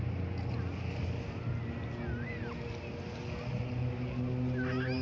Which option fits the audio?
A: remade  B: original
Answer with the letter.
B